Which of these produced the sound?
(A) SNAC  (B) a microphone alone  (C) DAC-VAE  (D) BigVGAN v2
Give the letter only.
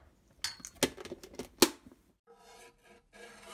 B